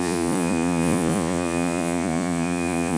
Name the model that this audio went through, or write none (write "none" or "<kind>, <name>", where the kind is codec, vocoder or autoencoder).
vocoder, Vocos